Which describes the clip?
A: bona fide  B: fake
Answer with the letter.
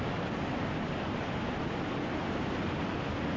A